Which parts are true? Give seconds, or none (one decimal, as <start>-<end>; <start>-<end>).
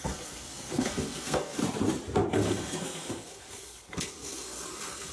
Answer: 1.6-2.3